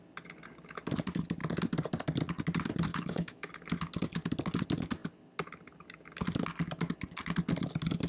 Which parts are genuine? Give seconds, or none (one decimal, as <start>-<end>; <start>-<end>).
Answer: 0.0-2.9; 3.5-8.1